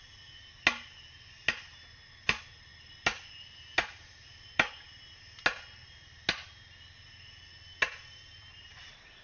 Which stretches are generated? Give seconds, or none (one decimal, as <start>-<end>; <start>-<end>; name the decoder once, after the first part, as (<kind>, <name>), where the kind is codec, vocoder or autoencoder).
none